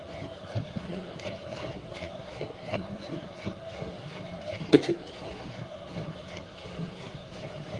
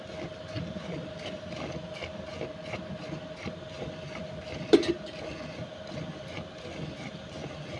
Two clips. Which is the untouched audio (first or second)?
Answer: second